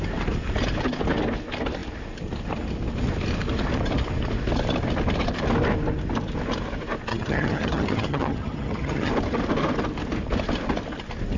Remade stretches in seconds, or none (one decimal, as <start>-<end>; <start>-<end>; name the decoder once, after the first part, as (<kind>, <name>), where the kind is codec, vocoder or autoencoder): 7.1-9.1 (vocoder, HiFi-GAN)